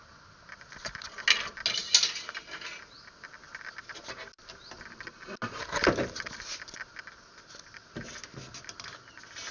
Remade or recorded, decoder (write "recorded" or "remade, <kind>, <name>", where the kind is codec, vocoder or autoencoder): recorded